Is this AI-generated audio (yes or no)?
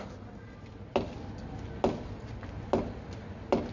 no